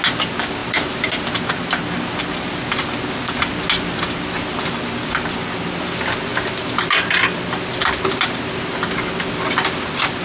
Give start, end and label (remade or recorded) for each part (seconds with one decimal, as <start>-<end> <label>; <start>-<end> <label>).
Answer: 0.0-10.2 recorded